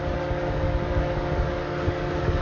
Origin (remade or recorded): remade